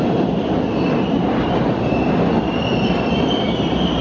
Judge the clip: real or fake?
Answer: real